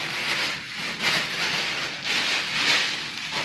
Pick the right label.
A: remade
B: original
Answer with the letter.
B